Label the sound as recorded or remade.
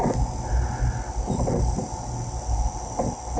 recorded